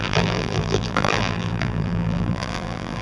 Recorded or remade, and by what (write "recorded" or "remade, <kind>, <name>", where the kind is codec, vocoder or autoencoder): remade, vocoder, BigVGAN v2